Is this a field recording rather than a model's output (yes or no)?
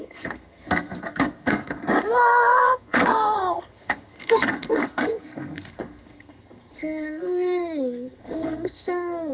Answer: no